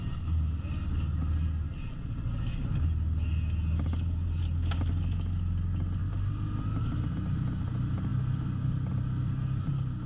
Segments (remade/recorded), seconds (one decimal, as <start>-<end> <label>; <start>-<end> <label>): 0.0-10.1 recorded

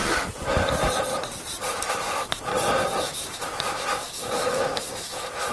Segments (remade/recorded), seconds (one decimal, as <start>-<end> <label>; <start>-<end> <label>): 0.0-1.9 recorded; 1.9-2.5 remade; 2.5-3.0 recorded; 3.0-5.5 remade

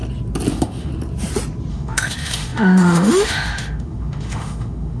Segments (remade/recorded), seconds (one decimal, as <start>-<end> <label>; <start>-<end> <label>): 0.0-0.5 recorded; 0.5-0.9 remade; 0.9-1.7 recorded; 1.7-5.0 remade

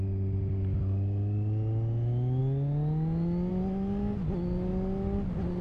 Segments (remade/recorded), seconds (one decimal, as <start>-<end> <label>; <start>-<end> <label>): 0.0-5.6 recorded

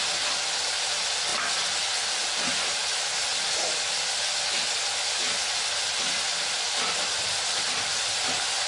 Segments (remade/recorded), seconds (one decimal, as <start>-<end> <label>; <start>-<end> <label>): 0.0-8.7 recorded

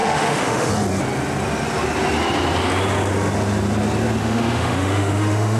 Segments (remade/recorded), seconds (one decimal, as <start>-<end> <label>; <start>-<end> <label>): 0.0-0.7 remade; 0.7-4.2 recorded; 4.2-5.6 remade